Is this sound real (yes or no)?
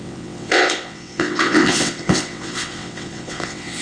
no